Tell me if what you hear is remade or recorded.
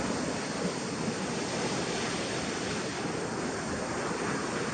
recorded